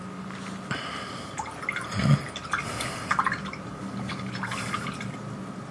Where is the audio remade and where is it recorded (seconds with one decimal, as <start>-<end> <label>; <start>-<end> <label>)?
0.0-3.7 recorded; 3.7-4.3 remade; 4.3-5.7 recorded